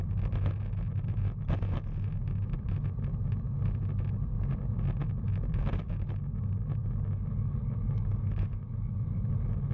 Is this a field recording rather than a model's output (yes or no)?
yes